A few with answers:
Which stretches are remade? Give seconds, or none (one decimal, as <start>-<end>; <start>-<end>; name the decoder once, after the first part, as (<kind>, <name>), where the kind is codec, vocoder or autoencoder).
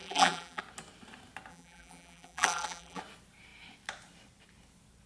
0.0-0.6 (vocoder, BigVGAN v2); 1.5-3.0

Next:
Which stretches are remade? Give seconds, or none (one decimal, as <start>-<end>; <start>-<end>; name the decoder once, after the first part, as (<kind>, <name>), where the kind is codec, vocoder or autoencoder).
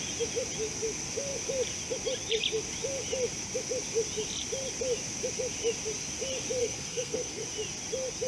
6.6-7.4 (codec, SNAC)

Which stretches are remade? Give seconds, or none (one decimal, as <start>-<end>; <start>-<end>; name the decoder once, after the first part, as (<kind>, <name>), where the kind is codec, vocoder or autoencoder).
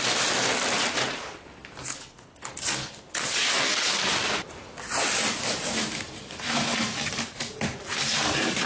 1.9-2.5 (codec, HILCodec)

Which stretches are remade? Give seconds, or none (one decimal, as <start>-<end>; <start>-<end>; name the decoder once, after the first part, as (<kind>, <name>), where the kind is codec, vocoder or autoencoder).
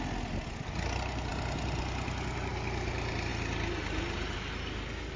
none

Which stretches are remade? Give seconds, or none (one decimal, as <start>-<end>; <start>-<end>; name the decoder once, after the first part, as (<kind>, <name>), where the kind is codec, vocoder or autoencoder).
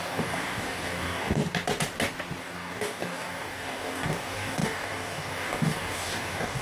0.0-1.4 (codec, DAC); 2.4-6.6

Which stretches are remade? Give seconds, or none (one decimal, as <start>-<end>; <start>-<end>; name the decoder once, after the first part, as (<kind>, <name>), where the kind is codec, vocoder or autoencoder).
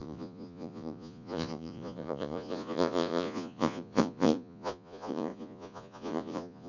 0.0-6.7 (vocoder, Vocos)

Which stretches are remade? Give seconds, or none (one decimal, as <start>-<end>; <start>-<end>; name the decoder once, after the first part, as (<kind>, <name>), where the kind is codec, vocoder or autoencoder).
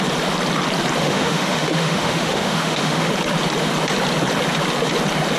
1.0-3.1 (autoencoder, DAC-VAE)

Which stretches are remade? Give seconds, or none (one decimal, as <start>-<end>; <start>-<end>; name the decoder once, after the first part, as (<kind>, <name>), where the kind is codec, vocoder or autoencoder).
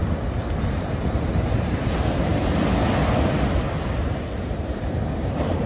0.0-2.3 (vocoder, BigVGAN v2); 4.6-5.7